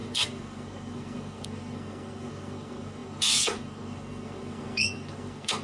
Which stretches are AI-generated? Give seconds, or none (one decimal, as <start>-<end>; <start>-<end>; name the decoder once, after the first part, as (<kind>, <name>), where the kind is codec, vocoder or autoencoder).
0.0-5.6 (codec, SNAC)